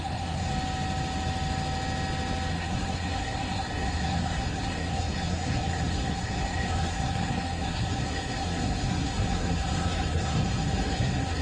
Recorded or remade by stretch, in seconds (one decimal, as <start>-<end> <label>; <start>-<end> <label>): 0.0-0.5 remade; 0.5-2.5 recorded; 2.5-11.4 remade